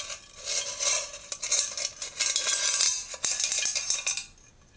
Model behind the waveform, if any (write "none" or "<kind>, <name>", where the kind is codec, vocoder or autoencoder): none